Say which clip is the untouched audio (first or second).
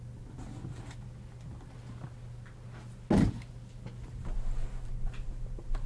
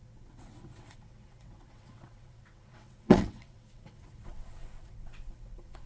first